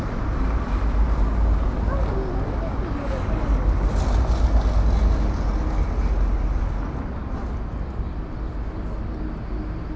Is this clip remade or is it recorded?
recorded